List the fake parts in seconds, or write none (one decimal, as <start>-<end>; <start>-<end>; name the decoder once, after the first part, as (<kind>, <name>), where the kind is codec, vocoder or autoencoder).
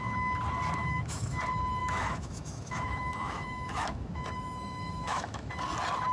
0.8-1.4 (autoencoder, DAC-VAE); 1.8-5.5